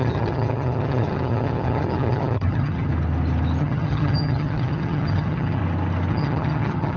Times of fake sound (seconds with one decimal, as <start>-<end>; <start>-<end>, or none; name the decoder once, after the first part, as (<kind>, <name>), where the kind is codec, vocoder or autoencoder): 0.0-2.9 (vocoder, HiFi-GAN); 3.6-5.6; 6.1-7.0